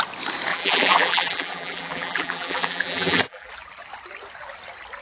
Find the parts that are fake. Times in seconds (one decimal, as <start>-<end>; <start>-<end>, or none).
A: 0.5-3.5